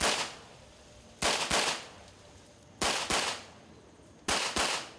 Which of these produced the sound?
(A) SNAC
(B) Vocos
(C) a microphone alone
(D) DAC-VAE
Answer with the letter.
C